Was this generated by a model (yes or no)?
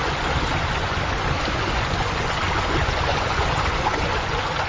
yes